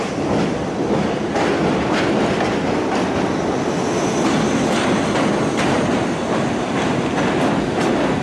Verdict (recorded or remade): recorded